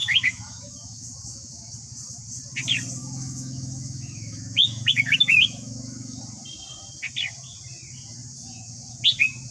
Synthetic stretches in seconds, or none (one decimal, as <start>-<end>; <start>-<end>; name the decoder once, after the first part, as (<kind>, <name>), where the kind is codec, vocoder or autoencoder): 0.0-1.7 (autoencoder, DAC-VAE); 3.0-6.2